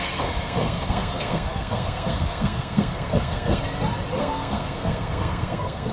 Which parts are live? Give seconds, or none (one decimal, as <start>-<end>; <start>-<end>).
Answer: 3.6-4.2